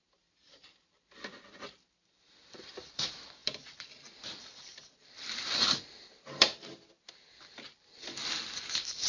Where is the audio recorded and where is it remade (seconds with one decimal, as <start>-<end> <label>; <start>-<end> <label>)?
0.0-9.1 remade